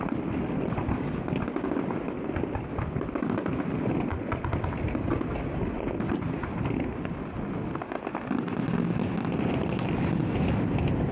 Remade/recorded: recorded